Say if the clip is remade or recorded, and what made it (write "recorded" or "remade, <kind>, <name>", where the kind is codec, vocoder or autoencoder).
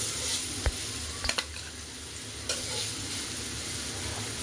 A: recorded